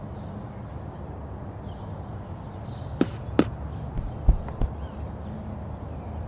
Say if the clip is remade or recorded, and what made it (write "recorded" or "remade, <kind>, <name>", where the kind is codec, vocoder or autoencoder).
recorded